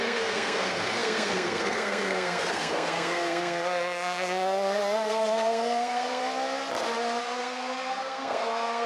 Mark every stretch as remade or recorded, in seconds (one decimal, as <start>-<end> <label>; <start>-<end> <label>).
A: 0.0-6.2 remade; 6.2-7.2 recorded; 7.2-8.9 remade